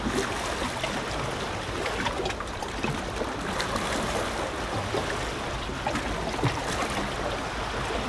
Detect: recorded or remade recorded